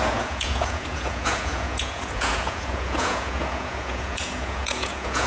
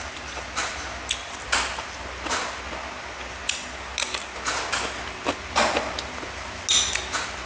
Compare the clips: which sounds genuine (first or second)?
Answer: second